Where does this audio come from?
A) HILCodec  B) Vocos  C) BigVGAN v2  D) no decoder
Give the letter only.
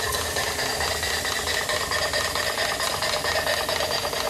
D